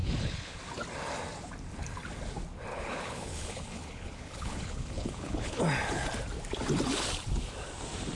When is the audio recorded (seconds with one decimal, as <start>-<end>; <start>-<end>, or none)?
0.6-2.7; 5.6-8.2